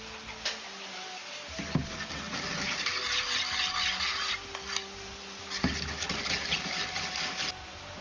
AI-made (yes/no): no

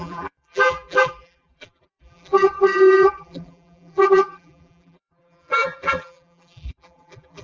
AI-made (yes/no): yes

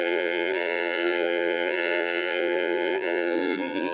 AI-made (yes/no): yes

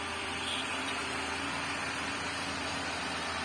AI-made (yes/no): yes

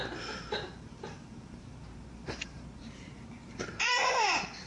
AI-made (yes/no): yes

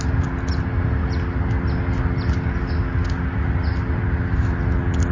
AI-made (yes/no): no